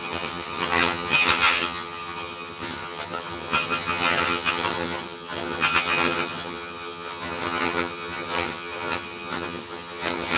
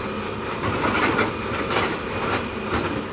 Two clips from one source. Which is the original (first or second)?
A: second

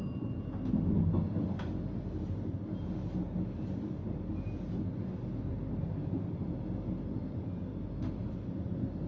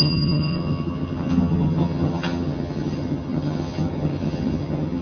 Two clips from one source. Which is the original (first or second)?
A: first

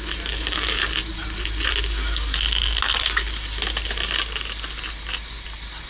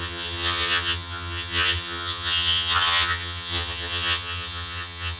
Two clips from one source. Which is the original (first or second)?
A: first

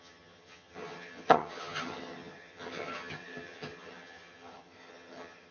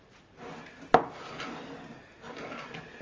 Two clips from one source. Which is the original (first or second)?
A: second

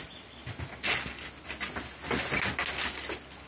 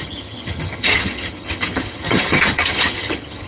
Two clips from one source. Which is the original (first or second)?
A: first